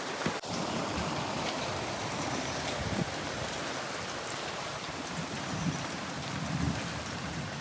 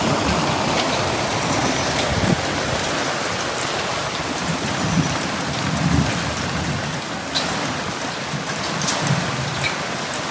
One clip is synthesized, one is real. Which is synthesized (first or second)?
first